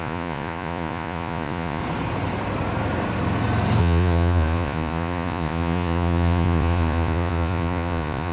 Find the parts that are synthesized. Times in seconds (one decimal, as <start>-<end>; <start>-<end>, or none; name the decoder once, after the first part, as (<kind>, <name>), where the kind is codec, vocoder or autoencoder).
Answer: 0.0-1.8 (vocoder, Vocos); 3.8-8.3